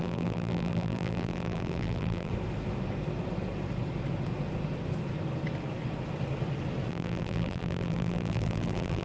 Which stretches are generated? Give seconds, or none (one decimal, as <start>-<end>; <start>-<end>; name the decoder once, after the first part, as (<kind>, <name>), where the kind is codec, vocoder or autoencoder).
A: 0.0-2.3 (vocoder, BigVGAN v2); 6.9-9.0